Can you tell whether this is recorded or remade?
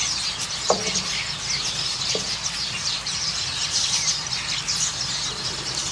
recorded